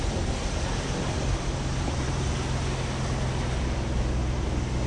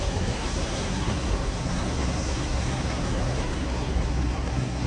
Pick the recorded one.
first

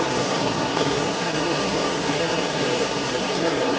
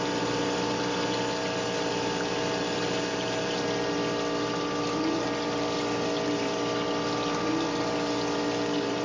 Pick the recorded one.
second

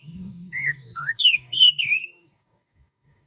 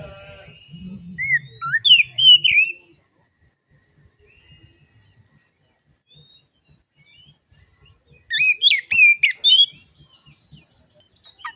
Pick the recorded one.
second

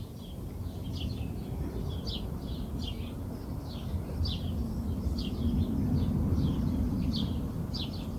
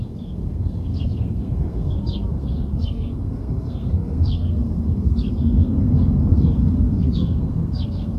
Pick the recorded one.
first